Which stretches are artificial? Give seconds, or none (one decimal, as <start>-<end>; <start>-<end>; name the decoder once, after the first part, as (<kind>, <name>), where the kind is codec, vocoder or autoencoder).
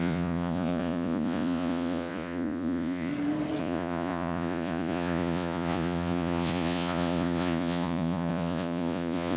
0.0-3.1 (vocoder, Vocos); 3.6-9.4